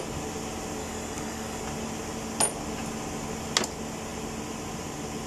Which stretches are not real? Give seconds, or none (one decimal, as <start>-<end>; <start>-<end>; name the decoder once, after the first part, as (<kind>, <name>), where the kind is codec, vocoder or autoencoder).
0.8-1.6 (codec, DAC)